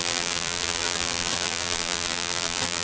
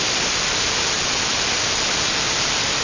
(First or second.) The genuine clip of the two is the second